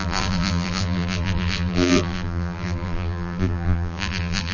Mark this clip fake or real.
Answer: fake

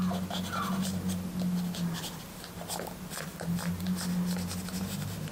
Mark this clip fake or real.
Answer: real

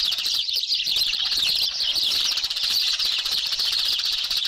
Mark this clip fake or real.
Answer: fake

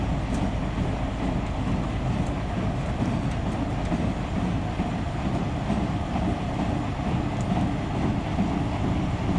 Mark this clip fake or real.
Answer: real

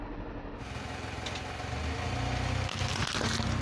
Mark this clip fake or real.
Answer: real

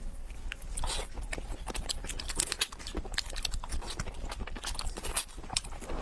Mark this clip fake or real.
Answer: real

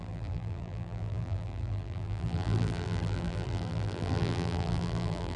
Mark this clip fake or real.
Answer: fake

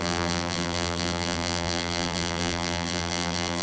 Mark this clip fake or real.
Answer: fake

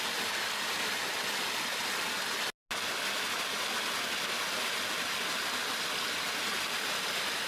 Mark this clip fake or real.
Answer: real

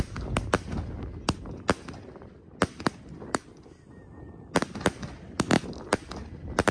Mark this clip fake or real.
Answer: real